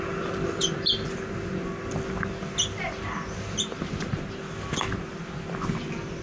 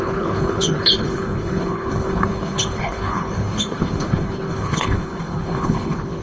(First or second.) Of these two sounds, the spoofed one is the second